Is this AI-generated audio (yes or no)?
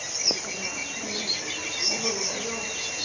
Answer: no